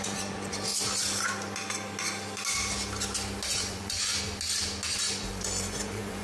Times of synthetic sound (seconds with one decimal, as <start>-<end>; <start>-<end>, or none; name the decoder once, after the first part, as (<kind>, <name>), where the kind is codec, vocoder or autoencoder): 0.0-0.7 (vocoder, Vocos); 3.5-4.1; 5.0-6.2